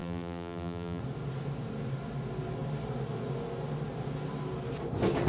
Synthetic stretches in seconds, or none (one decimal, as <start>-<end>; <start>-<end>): 0.0-1.0